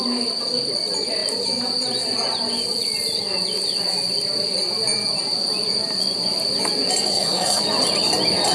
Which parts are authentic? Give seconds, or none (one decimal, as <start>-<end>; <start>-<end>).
0.0-7.1; 7.6-8.5